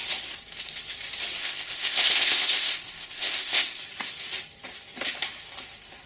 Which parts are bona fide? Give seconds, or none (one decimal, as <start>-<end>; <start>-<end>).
0.0-1.4; 3.8-6.1